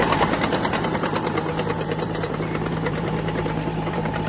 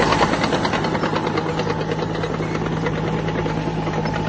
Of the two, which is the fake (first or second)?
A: first